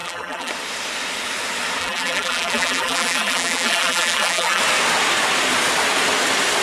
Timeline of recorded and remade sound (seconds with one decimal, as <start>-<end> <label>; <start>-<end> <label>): 0.0-0.5 remade; 0.5-1.8 recorded; 1.8-4.6 remade; 4.6-6.6 recorded